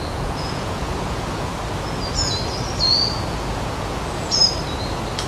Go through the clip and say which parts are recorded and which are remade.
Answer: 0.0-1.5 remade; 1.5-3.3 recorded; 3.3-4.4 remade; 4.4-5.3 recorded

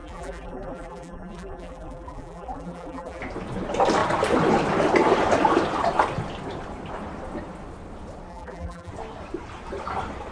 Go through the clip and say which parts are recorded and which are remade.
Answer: 0.0-3.2 remade; 3.2-8.3 recorded; 8.3-8.9 remade; 8.9-10.3 recorded

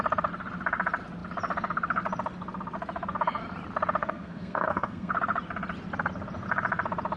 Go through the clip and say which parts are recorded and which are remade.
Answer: 0.0-4.0 recorded; 4.0-5.1 remade; 5.1-7.2 recorded

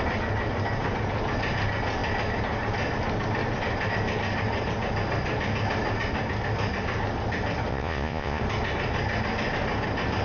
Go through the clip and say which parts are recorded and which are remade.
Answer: 0.0-7.7 recorded; 7.7-8.4 remade; 8.4-10.2 recorded

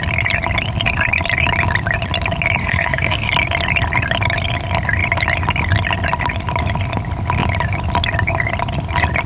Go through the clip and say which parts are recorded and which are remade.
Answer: 0.0-2.6 recorded; 2.6-3.3 remade; 3.3-9.3 recorded

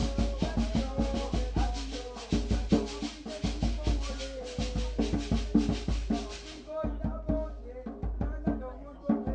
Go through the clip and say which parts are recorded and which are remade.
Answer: 0.0-9.3 recorded

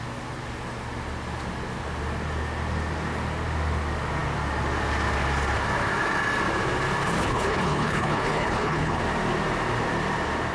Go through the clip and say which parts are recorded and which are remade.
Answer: 0.0-7.2 recorded; 7.2-9.0 remade; 9.0-10.5 recorded

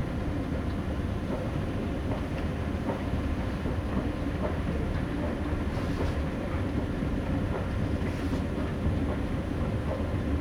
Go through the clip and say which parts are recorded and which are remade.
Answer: 0.0-10.4 recorded